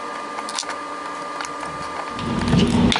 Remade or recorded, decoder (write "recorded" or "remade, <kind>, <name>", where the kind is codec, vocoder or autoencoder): recorded